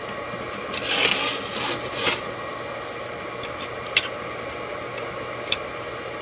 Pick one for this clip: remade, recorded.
recorded